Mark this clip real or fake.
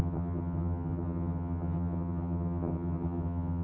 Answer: fake